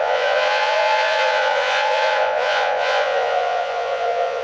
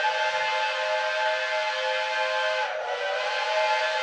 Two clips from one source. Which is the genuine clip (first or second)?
second